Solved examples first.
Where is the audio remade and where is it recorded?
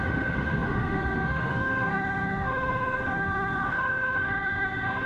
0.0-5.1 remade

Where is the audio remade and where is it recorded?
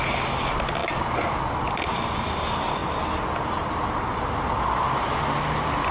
0.0-5.9 recorded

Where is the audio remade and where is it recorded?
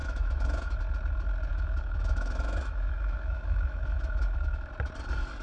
0.0-0.8 remade; 0.8-1.5 recorded; 1.5-4.7 remade; 4.7-5.4 recorded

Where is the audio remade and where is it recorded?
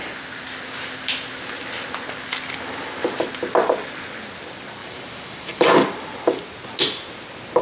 0.0-4.8 recorded; 4.8-5.7 remade; 5.7-7.6 recorded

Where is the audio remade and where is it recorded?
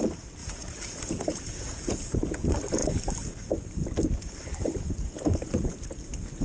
0.0-0.4 recorded; 0.4-2.4 remade; 2.4-6.4 recorded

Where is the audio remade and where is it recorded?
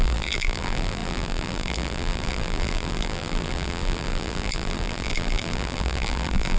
0.0-6.6 remade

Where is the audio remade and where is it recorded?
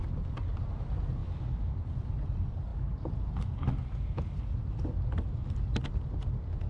0.0-6.7 recorded